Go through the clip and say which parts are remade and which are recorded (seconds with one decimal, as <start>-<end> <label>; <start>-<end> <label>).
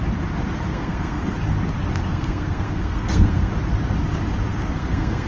0.0-0.7 recorded; 0.7-1.2 remade; 1.2-2.1 recorded; 2.1-3.5 remade; 3.5-4.5 recorded; 4.5-5.3 remade